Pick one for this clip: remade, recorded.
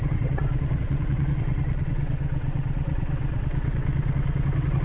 remade